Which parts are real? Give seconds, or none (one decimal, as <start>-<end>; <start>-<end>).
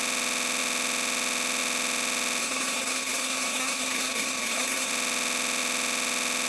0.0-2.4; 4.9-6.5